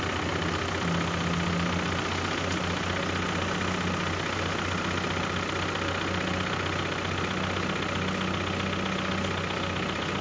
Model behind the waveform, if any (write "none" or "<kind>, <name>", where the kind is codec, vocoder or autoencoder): none